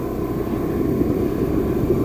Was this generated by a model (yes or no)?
no